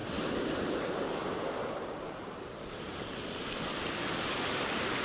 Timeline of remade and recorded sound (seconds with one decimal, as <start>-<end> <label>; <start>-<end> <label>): 0.0-3.0 remade; 3.0-5.0 recorded